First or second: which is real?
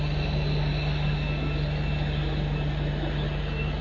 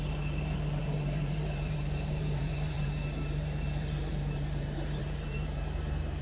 first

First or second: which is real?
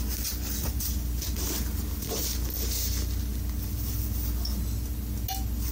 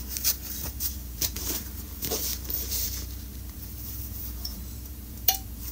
first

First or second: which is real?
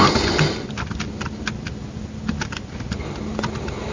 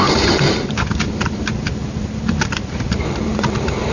first